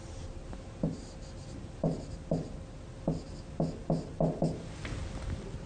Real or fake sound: real